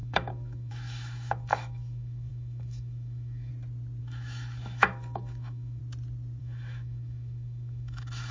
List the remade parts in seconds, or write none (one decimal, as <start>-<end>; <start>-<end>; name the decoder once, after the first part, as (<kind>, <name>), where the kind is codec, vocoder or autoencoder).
0.0-3.5 (autoencoder, DAC-VAE); 4.0-5.8; 6.4-8.3